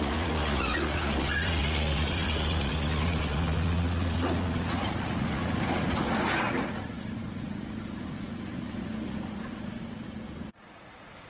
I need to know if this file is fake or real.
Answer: fake